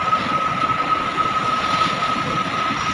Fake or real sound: real